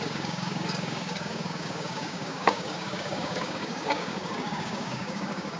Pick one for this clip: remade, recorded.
remade